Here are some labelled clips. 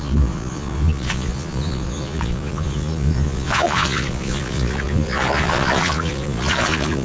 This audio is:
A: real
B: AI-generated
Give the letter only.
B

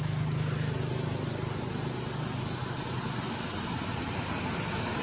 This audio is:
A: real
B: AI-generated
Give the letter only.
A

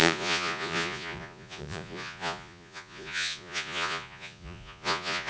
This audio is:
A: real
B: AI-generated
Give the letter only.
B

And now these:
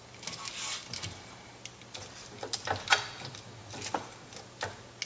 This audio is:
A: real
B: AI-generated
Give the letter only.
A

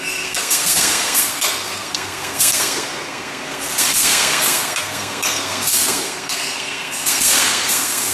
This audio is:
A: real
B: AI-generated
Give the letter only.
B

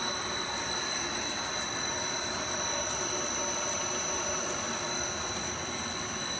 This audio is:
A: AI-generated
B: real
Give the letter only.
A